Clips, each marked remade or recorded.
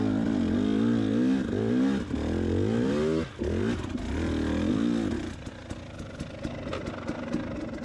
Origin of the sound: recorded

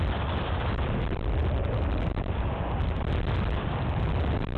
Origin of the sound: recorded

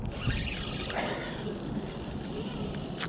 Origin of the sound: remade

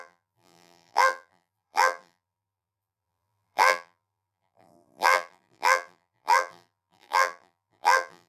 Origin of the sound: remade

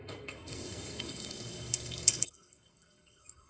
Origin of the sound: remade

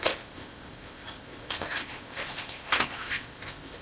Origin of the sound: remade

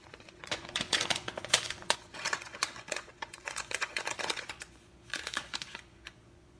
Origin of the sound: remade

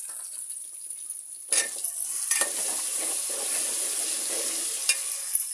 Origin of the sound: recorded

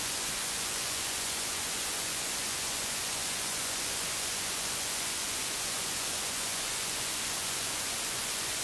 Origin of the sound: remade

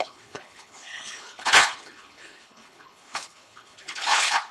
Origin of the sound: remade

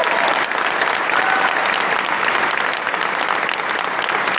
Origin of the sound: recorded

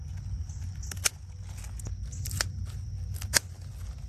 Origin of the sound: recorded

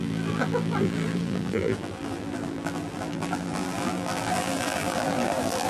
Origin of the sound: remade